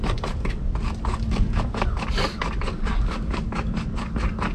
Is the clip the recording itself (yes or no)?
no